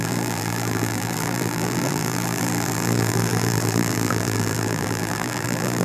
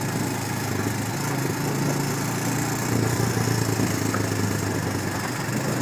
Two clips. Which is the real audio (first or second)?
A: second